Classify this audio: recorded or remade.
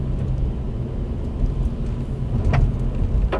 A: recorded